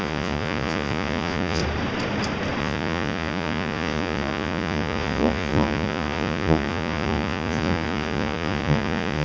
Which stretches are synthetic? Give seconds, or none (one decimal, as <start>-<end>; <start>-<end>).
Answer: 0.0-1.6; 2.6-9.2